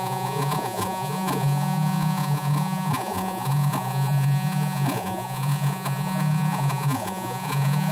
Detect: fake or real fake